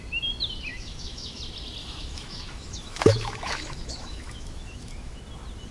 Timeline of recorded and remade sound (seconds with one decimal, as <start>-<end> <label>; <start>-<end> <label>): 0.0-0.7 recorded; 0.7-1.4 remade; 1.4-1.8 recorded; 1.8-5.2 remade; 5.2-5.7 recorded